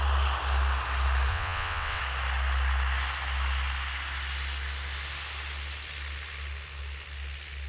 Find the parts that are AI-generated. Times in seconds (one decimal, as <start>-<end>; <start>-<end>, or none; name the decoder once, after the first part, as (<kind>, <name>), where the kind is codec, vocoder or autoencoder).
1.3-2.0 (vocoder, WaveNeXt)